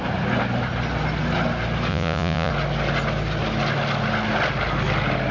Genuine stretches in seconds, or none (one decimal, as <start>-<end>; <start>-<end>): 0.0-1.9; 2.5-5.3